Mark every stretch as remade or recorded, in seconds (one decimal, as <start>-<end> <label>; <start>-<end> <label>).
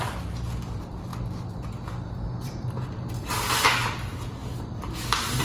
0.0-5.4 recorded